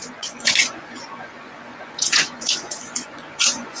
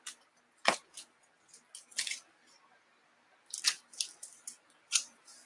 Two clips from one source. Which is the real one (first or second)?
second